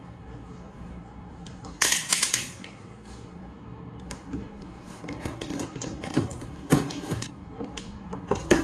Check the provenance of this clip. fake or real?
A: fake